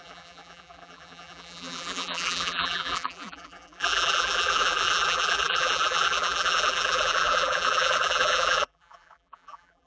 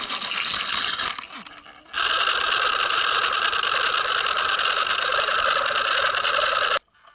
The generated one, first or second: first